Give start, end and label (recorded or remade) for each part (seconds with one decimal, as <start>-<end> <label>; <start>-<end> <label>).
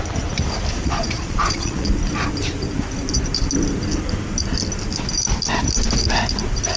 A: 0.0-0.7 recorded; 0.7-1.9 remade; 1.9-6.8 recorded